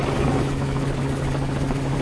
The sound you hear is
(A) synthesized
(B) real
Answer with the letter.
A